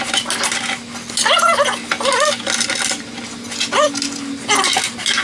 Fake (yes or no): no